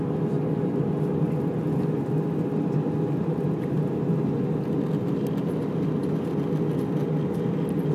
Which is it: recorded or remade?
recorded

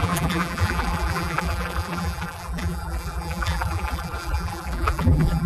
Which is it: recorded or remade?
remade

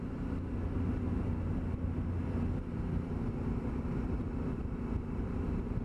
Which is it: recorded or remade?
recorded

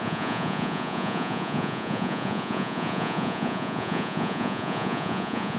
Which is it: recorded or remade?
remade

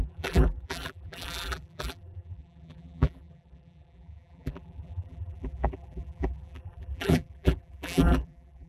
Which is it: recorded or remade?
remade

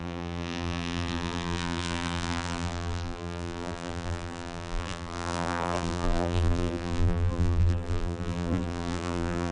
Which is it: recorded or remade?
remade